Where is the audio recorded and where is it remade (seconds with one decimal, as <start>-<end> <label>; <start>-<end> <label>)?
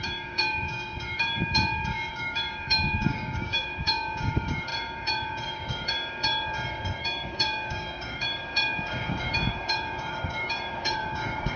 0.0-11.6 remade